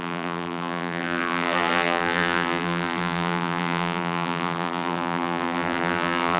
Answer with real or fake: fake